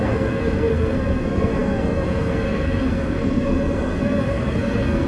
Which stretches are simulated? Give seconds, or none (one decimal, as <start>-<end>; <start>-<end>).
0.0-5.1